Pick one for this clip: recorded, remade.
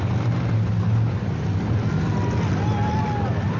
recorded